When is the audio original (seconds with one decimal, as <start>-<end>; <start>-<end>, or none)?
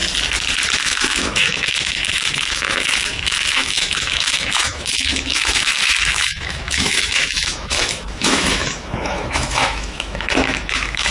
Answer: 0.0-0.8